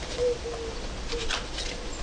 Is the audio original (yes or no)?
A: yes